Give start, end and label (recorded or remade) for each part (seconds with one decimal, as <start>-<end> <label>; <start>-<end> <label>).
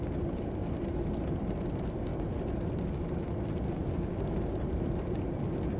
0.0-5.8 recorded